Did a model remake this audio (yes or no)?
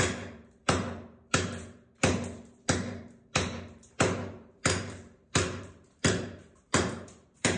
yes